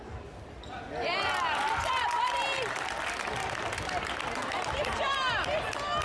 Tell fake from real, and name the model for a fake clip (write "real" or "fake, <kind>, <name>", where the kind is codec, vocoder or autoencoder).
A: real